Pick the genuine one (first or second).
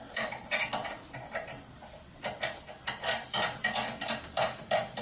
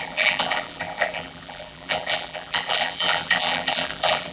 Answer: first